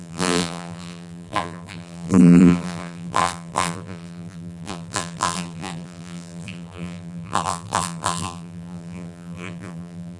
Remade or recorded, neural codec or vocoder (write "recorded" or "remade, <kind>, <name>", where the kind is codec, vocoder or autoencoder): remade, vocoder, BigVGAN v2